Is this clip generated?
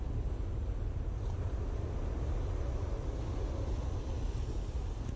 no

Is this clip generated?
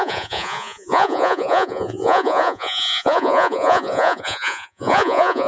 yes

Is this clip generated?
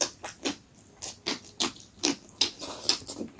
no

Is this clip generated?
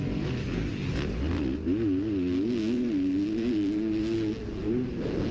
no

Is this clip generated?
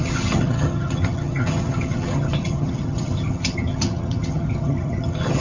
yes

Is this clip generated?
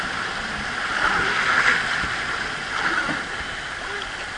no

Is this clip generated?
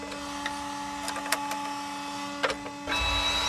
no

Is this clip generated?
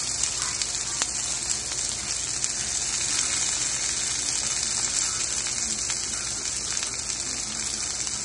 no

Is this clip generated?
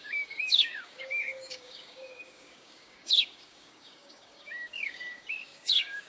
yes